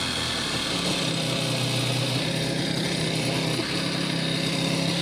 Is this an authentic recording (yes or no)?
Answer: yes